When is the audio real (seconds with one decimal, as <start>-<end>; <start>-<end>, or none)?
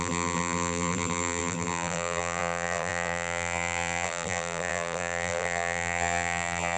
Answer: none